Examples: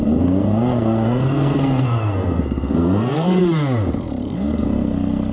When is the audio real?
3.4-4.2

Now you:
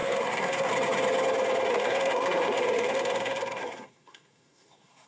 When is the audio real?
0.7-1.7

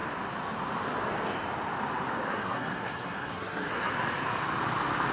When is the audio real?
0.0-2.3; 3.9-5.1

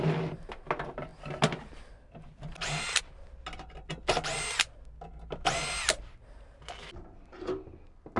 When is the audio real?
0.0-8.2

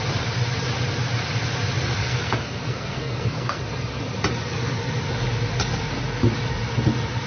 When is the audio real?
0.0-2.0; 3.6-7.3

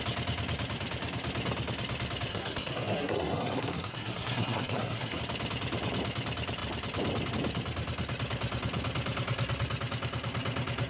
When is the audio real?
0.0-2.3; 5.2-10.9

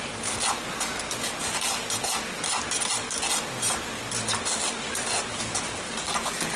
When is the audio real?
0.0-6.6